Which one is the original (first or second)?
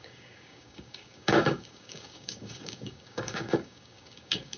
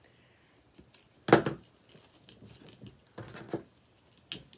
second